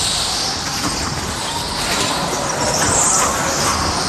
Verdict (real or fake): real